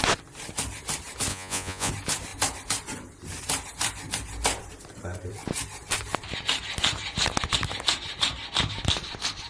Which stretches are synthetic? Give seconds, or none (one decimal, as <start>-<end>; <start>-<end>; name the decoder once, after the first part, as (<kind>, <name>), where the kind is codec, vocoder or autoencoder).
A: 1.3-1.9 (vocoder, Vocos)